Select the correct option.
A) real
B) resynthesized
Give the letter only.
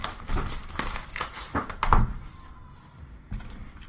A